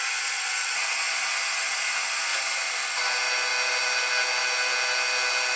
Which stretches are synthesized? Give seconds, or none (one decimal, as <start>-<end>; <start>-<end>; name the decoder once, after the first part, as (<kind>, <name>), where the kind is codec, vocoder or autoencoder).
none